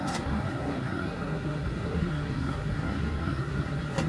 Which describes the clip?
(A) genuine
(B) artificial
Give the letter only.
B